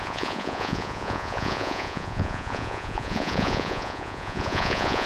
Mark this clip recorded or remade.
remade